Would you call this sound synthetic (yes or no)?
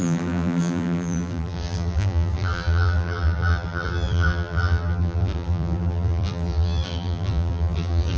yes